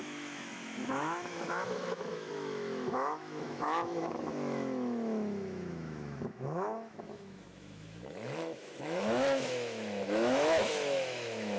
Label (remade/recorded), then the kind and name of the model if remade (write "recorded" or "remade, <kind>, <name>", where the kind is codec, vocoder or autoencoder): remade, autoencoder, DAC-VAE